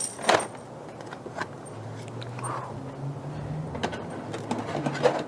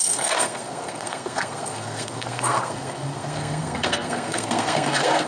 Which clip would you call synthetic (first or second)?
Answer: second